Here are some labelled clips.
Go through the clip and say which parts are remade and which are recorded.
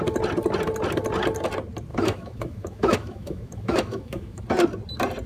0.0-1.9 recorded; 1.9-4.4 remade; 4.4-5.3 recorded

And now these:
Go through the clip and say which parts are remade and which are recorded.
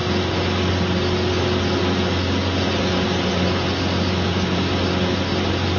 0.0-5.8 recorded